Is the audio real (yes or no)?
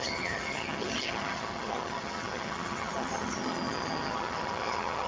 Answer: no